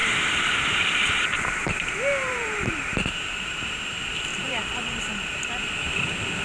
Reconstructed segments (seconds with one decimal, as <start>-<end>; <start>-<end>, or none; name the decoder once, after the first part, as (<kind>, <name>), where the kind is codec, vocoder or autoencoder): 0.0-3.8 (vocoder, BigVGAN v2); 4.3-5.5